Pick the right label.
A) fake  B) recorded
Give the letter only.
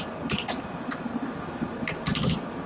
B